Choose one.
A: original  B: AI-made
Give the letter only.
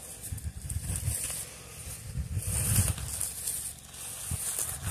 A